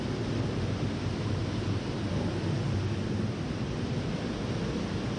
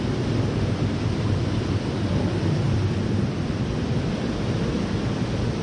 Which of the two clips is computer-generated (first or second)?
second